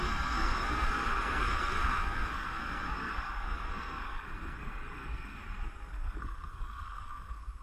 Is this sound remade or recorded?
remade